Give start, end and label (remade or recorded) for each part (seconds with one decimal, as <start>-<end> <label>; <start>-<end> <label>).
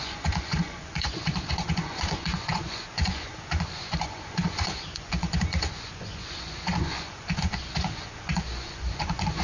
0.0-9.4 remade